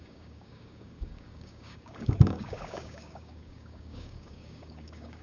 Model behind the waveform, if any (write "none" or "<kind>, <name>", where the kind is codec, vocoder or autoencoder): codec, DAC